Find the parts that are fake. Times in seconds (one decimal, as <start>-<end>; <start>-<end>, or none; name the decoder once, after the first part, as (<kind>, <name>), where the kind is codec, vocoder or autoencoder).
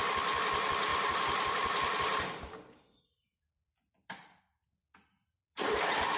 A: 0.9-4.4 (vocoder, BigVGAN v2); 5.2-5.7